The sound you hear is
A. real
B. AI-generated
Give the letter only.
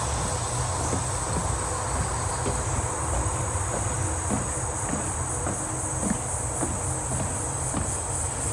A